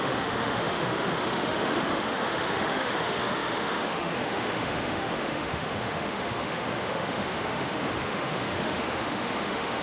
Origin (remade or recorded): remade